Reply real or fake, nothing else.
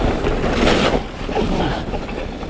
real